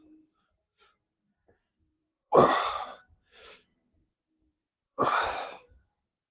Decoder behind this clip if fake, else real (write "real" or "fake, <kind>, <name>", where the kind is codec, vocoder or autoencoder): fake, vocoder, BigVGAN v2